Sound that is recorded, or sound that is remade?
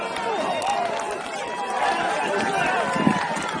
recorded